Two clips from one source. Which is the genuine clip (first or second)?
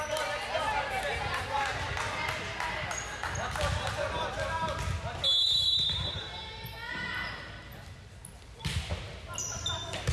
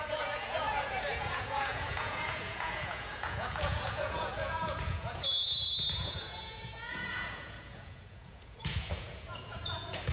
first